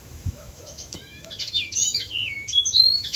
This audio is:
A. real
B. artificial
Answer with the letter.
B